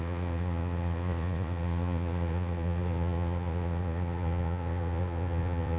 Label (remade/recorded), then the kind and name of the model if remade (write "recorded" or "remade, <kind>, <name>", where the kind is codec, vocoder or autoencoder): remade, vocoder, Vocos